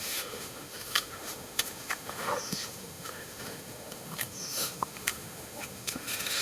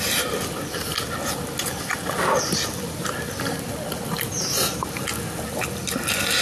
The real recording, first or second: second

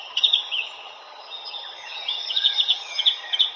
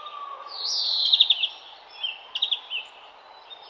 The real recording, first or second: second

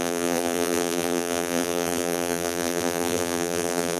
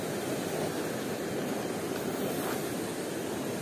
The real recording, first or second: second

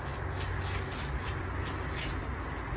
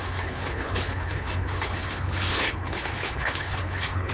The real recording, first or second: first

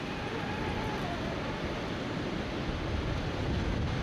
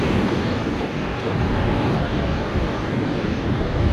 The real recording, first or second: first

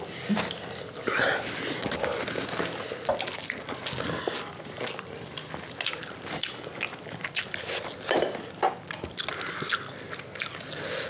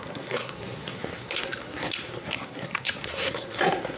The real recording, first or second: first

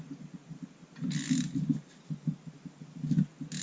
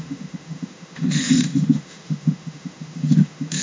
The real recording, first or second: first